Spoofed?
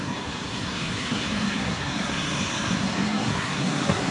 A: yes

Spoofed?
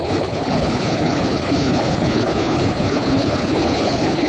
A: yes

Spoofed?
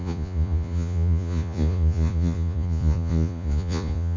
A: yes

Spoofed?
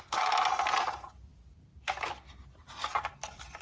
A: no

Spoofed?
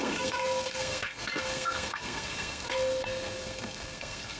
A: yes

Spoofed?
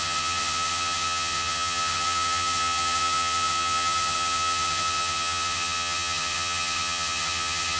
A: yes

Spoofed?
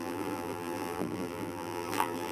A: yes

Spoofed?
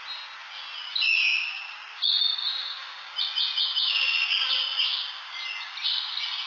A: no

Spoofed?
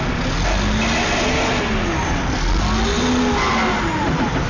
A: no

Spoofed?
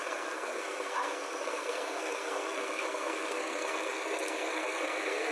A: yes